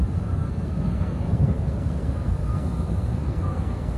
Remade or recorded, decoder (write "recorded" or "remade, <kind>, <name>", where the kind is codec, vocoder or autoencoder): remade, codec, SNAC